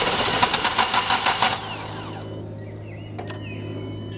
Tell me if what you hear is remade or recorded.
recorded